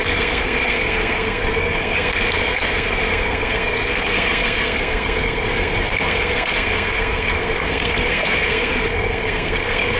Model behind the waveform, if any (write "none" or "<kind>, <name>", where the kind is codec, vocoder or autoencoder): codec, SNAC